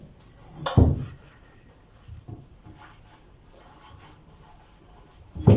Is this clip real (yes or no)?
yes